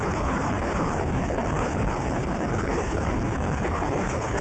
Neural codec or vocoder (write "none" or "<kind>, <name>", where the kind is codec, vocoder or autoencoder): codec, HILCodec